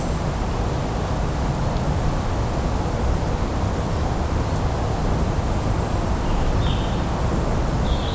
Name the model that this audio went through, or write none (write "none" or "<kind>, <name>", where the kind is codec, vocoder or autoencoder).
none